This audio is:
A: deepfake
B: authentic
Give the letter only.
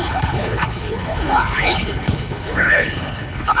A